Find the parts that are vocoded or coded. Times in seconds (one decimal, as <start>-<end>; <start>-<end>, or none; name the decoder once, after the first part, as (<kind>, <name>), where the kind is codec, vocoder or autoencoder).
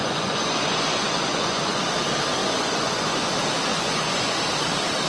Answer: 0.0-1.8 (vocoder, Vocos); 2.4-3.3; 3.7-4.4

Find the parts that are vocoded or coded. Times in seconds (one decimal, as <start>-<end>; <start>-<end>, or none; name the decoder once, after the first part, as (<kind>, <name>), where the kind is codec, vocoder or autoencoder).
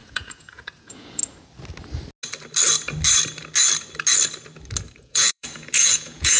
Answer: 0.0-1.2 (vocoder, Vocos); 5.0-6.4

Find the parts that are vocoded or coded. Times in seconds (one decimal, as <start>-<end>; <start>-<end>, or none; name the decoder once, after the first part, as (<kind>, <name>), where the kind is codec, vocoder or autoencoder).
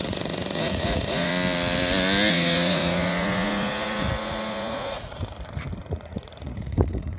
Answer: 0.0-1.3 (vocoder, Vocos); 2.3-5.2; 5.8-7.2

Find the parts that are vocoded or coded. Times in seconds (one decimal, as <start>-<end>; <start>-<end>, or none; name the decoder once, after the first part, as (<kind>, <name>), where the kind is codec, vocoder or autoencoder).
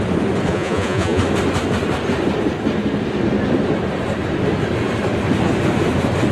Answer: 0.5-1.2 (vocoder, Vocos)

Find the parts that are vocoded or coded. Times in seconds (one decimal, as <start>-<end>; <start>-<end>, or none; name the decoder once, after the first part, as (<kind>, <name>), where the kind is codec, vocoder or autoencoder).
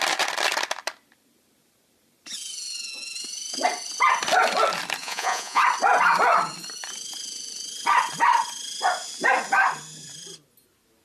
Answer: 5.0-5.6 (vocoder, Vocos)